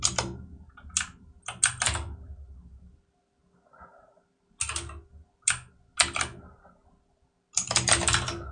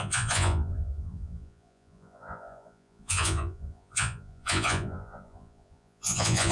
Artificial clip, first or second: second